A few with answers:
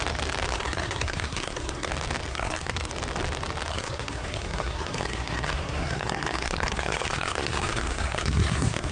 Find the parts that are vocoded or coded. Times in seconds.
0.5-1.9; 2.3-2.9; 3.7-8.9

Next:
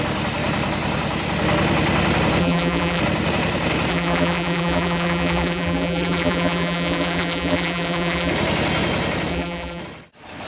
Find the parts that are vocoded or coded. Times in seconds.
2.4-3.0; 3.9-8.3; 9.3-9.8

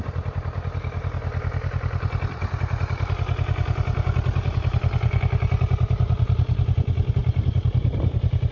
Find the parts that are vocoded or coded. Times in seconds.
none

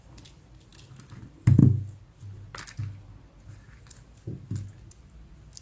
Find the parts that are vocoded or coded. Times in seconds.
none

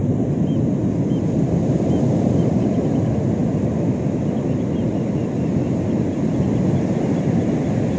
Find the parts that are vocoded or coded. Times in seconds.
none

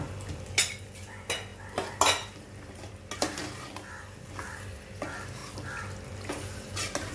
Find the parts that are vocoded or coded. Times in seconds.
none